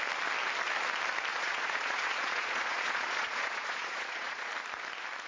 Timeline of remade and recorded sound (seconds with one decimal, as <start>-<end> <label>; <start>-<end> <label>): 0.0-1.3 recorded; 1.3-4.5 remade; 4.5-5.3 recorded

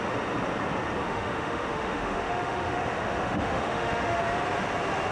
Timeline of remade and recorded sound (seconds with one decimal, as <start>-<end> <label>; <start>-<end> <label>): 0.0-1.1 recorded; 1.1-4.2 remade; 4.2-5.1 recorded